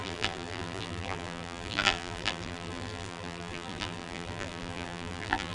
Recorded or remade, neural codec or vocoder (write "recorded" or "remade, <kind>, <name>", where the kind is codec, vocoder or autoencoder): remade, vocoder, BigVGAN v2